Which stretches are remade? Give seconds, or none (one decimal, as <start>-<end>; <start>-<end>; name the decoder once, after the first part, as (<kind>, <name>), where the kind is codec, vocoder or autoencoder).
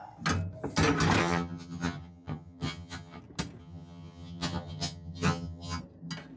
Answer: 1.2-3.2 (vocoder, HiFi-GAN); 3.6-5.8